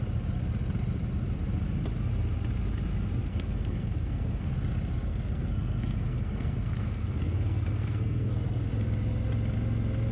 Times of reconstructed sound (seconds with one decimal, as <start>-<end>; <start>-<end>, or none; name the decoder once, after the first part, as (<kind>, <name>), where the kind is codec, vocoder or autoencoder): 3.3-4.5 (codec, SNAC); 5.1-8.7